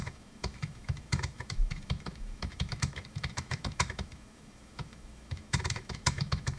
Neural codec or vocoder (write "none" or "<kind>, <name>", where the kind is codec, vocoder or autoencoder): autoencoder, DAC-VAE